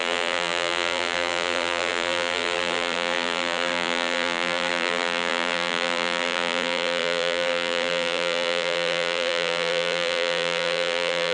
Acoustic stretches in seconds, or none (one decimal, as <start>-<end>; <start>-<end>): none